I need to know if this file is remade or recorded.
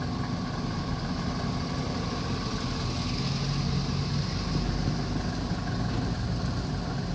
recorded